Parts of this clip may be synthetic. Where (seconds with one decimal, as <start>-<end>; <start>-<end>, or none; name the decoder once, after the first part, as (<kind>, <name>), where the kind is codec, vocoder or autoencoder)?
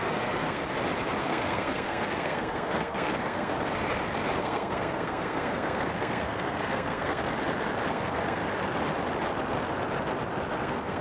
0.0-0.6 (codec, SNAC); 1.2-3.5; 4.4-7.2; 7.9-8.4; 10.6-11.0